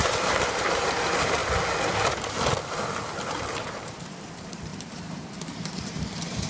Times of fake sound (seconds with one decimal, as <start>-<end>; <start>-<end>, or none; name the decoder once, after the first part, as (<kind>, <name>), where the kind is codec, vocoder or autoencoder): 0.0-1.4 (vocoder, BigVGAN v2); 3.2-6.5